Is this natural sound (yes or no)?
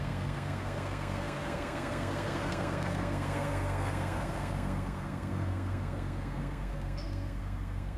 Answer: no